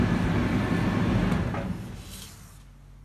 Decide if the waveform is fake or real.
real